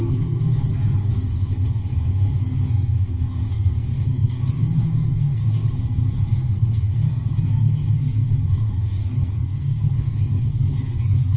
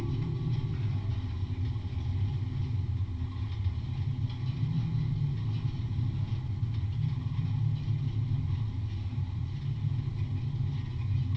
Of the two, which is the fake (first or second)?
first